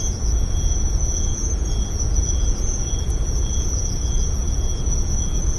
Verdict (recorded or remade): remade